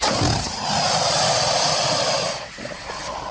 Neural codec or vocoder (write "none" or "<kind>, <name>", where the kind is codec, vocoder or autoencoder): none